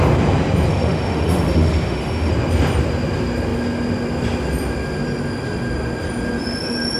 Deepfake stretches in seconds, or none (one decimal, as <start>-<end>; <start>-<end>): 0.7-2.3